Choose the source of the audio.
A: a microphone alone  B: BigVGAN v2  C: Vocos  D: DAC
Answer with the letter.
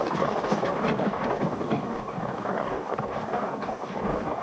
D